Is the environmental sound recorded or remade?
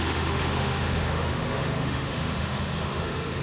remade